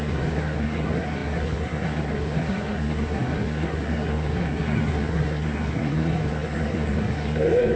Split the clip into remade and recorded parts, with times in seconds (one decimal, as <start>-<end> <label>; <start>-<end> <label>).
0.0-7.8 remade